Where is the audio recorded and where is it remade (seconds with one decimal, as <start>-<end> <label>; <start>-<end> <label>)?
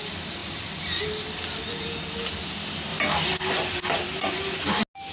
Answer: 0.0-5.1 recorded